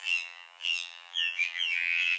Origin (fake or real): fake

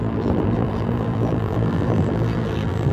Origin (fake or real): fake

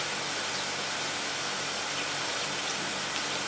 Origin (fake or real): real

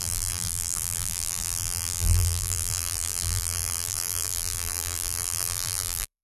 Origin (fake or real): fake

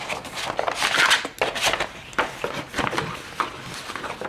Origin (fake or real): real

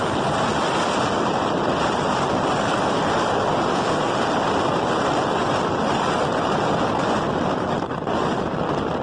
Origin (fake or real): real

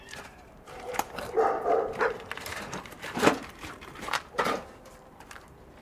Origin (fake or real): fake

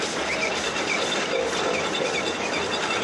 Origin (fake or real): fake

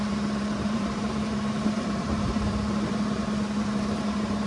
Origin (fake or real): fake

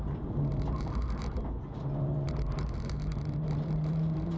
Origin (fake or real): fake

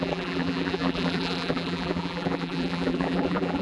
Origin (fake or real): fake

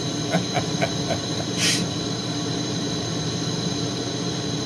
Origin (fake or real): fake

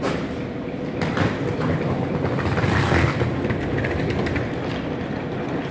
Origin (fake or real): real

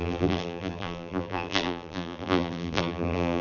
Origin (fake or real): fake